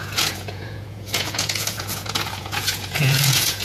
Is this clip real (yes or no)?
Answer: no